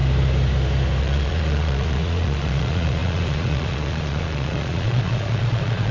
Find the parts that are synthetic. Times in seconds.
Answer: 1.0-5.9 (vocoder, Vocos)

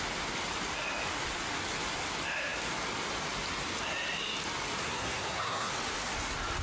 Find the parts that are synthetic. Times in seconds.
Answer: 4.8-5.7 (codec, SNAC)

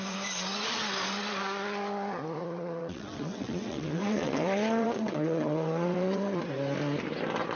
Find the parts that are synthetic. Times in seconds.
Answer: 2.4-6.4 (vocoder, WaveNeXt)

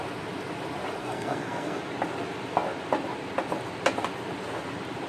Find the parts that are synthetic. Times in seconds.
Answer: 1.0-1.8 (codec, SNAC)

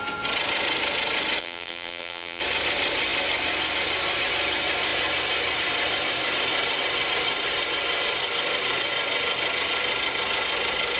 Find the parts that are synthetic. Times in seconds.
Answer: 1.4-2.4 (vocoder, BigVGAN v2)

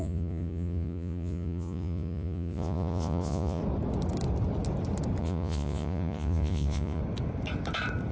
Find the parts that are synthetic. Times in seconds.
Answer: 0.0-3.6 (vocoder, Vocos); 5.2-7.0